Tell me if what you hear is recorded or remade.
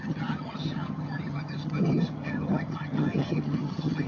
remade